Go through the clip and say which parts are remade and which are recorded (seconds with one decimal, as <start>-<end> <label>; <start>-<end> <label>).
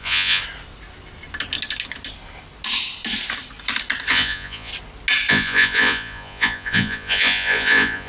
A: 0.0-0.4 remade; 0.4-4.1 recorded; 4.1-4.7 remade; 4.7-5.3 recorded; 5.3-8.1 remade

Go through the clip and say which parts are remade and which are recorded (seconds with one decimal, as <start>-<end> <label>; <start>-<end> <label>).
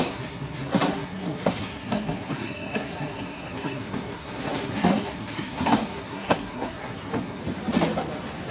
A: 0.0-7.4 remade; 7.4-8.5 recorded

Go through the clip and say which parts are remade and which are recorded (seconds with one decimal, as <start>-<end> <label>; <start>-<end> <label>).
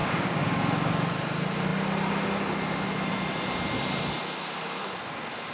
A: 0.0-0.6 remade; 0.6-5.5 recorded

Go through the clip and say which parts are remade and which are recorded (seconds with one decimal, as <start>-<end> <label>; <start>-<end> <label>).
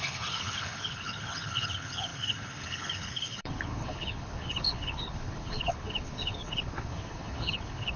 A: 0.0-8.0 remade